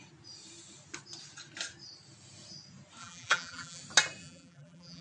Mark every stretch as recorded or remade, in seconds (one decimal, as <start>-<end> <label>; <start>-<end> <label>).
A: 0.0-3.0 recorded; 3.0-3.8 remade; 3.8-4.2 recorded; 4.2-5.0 remade